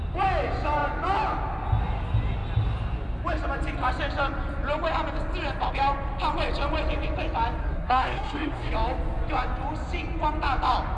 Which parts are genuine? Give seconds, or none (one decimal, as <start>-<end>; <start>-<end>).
0.0-7.6; 8.7-11.0